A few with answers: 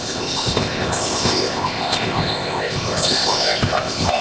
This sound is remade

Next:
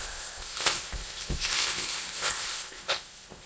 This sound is remade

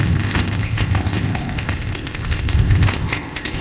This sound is remade